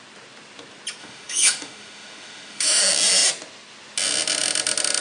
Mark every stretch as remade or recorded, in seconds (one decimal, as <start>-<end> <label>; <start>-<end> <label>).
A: 0.0-1.0 recorded; 1.0-2.8 remade; 2.8-5.0 recorded